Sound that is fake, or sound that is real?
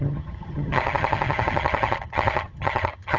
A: fake